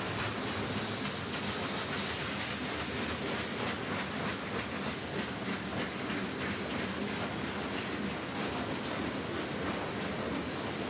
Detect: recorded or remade recorded